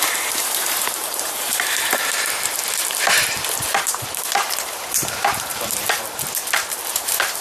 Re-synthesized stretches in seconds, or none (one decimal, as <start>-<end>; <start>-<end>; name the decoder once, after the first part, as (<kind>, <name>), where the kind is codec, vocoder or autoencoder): 0.0-6.2 (vocoder, BigVGAN v2); 6.8-7.4